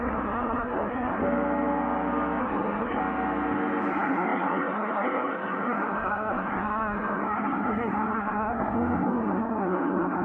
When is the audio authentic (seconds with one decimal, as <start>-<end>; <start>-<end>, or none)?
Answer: 1.2-2.4; 3.0-3.9